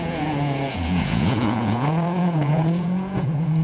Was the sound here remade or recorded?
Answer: remade